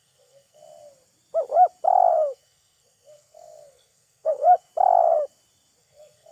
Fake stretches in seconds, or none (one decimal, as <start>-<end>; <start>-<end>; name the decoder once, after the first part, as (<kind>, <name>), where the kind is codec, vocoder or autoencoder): 0.0-0.6 (codec, SNAC); 2.1-4.7; 5.8-6.3